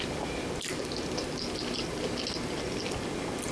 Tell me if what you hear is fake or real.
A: real